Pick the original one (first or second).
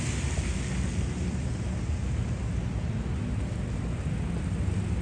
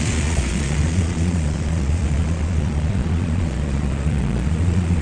first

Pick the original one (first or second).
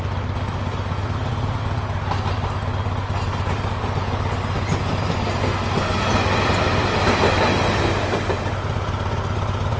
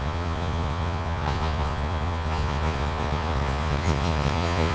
first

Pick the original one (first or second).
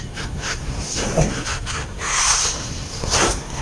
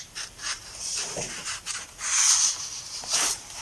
second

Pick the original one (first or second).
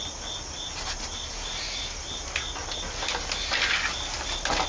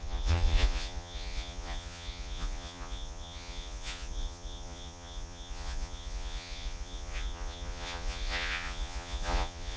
first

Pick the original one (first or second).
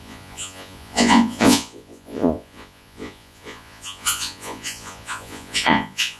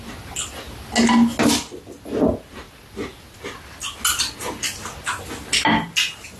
second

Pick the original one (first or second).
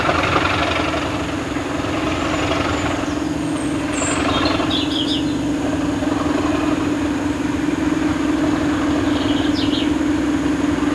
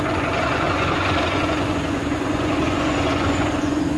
first